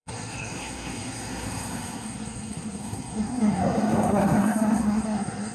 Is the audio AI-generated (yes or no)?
yes